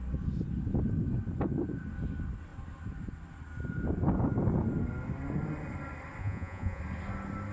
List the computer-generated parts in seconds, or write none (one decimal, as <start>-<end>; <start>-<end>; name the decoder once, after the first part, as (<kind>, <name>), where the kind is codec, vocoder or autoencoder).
6.2-6.8 (vocoder, Vocos)